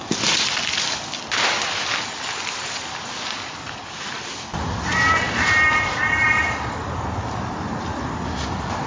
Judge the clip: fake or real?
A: real